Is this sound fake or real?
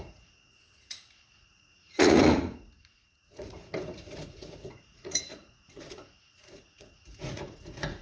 fake